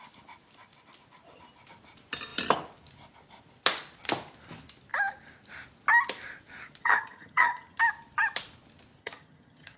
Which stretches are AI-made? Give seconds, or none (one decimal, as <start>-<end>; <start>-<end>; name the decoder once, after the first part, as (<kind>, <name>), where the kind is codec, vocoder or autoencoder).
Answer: 6.8-7.8 (vocoder, HiFi-GAN); 9.0-9.8